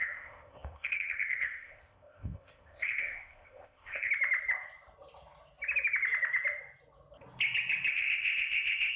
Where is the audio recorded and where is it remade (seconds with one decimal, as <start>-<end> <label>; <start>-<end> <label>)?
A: 0.0-4.1 remade; 4.1-7.9 recorded; 7.9-9.0 remade